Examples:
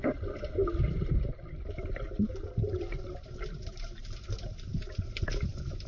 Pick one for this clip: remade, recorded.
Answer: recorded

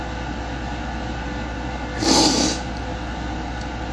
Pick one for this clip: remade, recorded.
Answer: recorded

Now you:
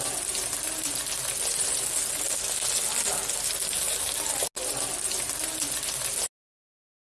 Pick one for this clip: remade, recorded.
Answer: recorded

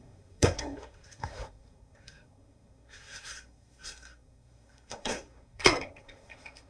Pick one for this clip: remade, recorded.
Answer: remade